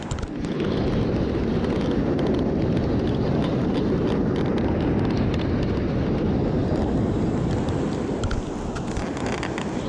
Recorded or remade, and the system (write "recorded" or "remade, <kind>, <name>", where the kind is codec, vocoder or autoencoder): recorded